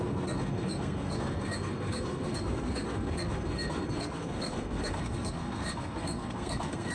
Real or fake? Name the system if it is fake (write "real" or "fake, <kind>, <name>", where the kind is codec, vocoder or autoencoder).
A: fake, codec, SNAC